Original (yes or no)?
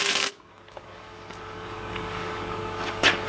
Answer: no